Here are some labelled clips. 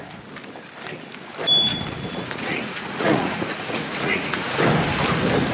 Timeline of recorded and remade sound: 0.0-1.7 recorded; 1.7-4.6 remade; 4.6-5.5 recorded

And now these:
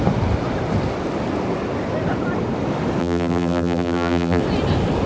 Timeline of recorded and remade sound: 0.0-3.0 recorded; 3.0-4.4 remade; 4.4-5.1 recorded

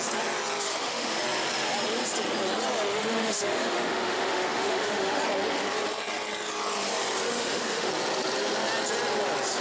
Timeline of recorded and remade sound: 0.0-0.7 recorded; 0.7-1.2 remade; 1.2-2.9 recorded; 2.9-5.2 remade; 5.2-7.3 recorded; 7.3-7.9 remade; 7.9-9.6 recorded

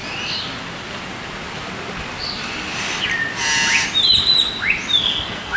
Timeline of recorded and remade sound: 0.0-5.0 recorded; 5.0-5.6 remade

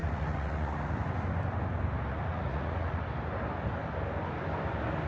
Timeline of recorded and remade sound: 0.0-1.0 remade; 1.0-2.1 recorded; 2.1-3.0 remade; 3.0-5.1 recorded

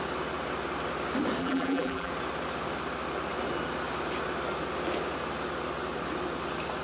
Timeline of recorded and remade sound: 0.0-1.4 recorded; 1.4-2.1 remade; 2.1-6.8 recorded

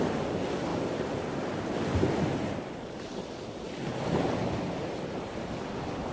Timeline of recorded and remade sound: 0.0-0.7 recorded; 0.7-1.2 remade; 1.2-3.9 recorded; 3.9-5.6 remade; 5.6-6.1 recorded

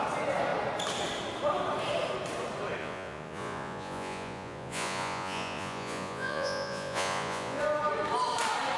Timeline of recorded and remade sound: 0.0-2.8 recorded; 2.8-7.6 remade; 7.6-8.8 recorded